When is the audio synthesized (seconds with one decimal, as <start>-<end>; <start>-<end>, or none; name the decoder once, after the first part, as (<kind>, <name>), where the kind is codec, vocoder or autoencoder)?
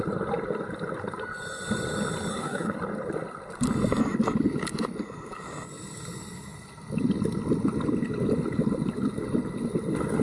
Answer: 2.3-2.8 (codec, SNAC)